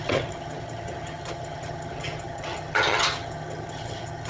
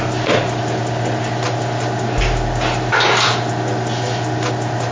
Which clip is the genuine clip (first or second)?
second